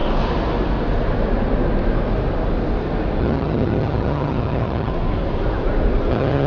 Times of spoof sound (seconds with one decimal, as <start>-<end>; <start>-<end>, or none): 3.2-4.9; 6.1-6.5